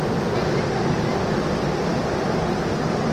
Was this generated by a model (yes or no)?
no